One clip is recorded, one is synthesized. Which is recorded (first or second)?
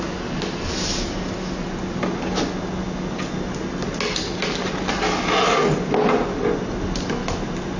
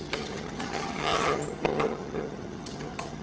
first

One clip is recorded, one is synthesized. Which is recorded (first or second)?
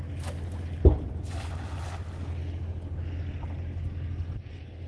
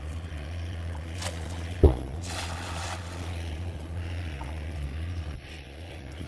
first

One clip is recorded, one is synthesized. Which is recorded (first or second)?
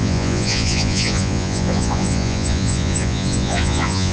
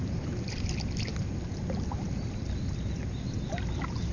second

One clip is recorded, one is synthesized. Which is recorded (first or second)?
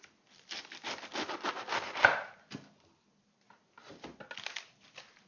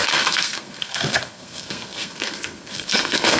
first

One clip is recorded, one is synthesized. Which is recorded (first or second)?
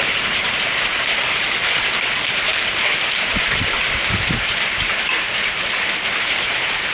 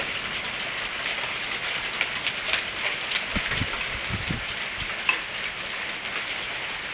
second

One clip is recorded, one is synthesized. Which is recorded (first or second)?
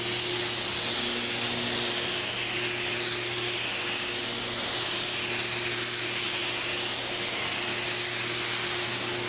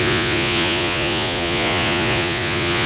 first